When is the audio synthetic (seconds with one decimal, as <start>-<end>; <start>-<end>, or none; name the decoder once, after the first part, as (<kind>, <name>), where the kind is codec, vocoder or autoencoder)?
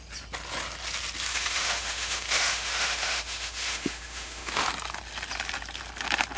1.3-4.7 (autoencoder, DAC-VAE)